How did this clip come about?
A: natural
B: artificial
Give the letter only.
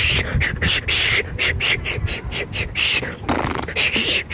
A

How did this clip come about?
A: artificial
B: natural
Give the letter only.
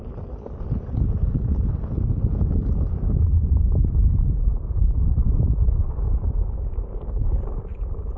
B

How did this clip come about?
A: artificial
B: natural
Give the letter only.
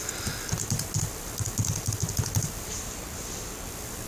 B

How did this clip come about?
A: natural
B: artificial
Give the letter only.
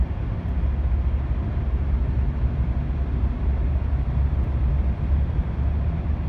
A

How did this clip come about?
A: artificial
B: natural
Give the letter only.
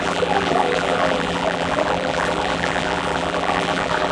A